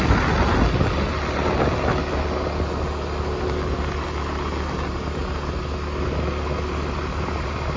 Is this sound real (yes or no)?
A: yes